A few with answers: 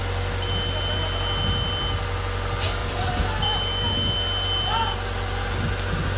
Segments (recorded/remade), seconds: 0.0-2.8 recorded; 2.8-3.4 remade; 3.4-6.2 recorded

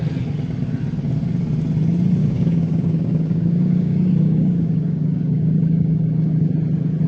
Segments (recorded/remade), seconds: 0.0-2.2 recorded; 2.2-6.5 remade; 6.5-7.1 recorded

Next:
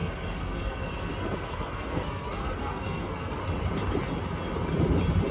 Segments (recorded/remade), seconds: 0.0-3.4 remade; 3.4-5.3 recorded

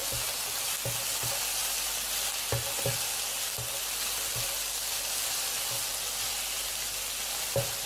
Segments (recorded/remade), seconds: 0.0-7.9 recorded

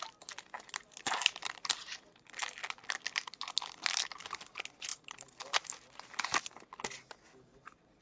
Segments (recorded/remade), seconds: 0.0-8.0 recorded